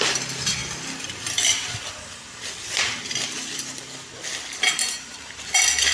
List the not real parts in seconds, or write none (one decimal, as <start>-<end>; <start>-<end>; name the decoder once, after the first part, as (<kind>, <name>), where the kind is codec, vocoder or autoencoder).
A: 0.6-4.1 (vocoder, BigVGAN v2)